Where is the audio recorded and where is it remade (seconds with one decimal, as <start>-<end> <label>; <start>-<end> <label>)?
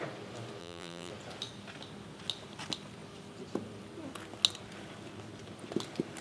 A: 0.0-0.6 recorded; 0.6-1.1 remade; 1.1-6.2 recorded